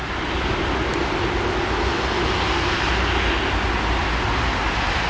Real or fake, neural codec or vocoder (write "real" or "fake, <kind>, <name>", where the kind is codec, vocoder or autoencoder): real